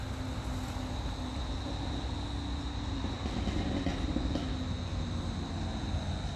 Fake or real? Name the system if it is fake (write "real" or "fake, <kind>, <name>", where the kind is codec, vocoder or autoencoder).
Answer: real